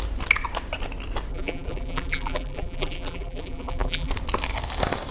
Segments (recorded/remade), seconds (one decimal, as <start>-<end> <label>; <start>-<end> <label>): 0.0-1.3 recorded; 1.3-4.1 remade; 4.1-5.1 recorded